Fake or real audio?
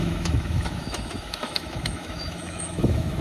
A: fake